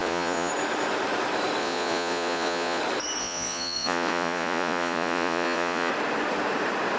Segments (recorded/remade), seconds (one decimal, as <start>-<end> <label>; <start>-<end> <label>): 0.0-0.5 remade; 0.5-1.6 recorded; 1.6-2.8 remade; 2.8-3.2 recorded; 3.2-5.9 remade; 5.9-7.0 recorded